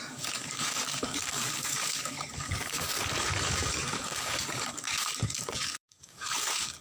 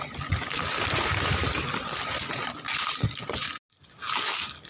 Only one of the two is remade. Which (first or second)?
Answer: first